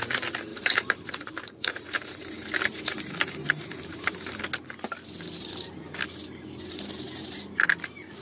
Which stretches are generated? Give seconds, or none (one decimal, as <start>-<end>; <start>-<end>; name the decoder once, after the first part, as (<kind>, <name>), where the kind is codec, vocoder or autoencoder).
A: 0.5-4.4 (vocoder, BigVGAN v2)